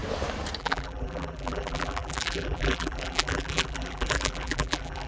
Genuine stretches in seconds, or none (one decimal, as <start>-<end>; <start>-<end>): 0.0-0.6

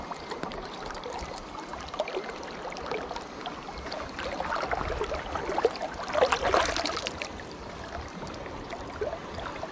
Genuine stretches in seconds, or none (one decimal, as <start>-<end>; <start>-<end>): 0.0-9.7

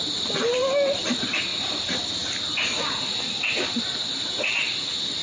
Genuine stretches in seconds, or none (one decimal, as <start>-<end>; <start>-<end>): 0.0-5.2

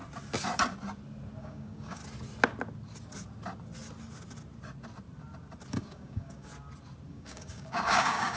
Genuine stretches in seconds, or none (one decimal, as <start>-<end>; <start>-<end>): 0.0-1.4; 2.0-5.7; 6.5-7.1